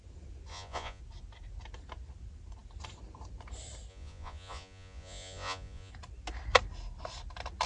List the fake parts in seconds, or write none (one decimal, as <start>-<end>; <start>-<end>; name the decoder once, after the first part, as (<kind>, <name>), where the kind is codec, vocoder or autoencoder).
0.5-1.0 (vocoder, Vocos); 3.9-5.9